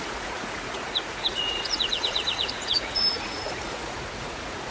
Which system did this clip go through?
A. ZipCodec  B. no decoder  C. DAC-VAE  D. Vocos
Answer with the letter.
D